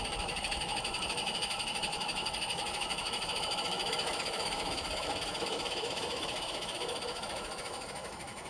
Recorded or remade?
remade